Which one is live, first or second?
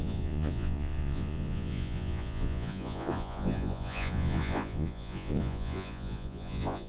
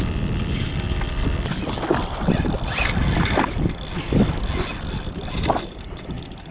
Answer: second